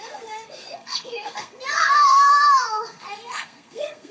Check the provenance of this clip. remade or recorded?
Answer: remade